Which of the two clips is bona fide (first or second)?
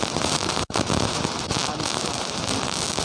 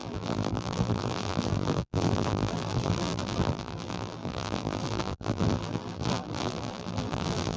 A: first